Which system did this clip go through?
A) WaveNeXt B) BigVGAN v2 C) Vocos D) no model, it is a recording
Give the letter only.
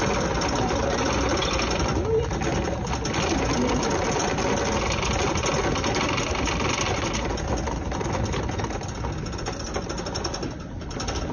D